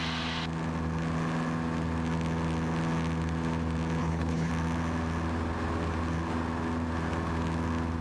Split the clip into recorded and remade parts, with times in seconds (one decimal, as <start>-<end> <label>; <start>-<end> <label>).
0.0-4.0 recorded; 4.0-4.5 remade; 4.5-8.0 recorded